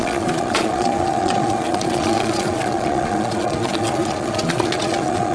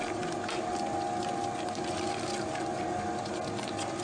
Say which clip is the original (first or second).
second